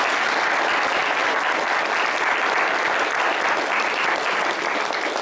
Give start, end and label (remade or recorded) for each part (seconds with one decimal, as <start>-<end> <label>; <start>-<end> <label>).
0.0-5.2 recorded